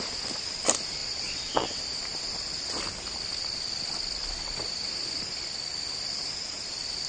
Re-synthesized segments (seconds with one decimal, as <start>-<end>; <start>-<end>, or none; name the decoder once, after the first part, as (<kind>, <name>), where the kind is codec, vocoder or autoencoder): 1.0-1.8 (vocoder, WaveNeXt)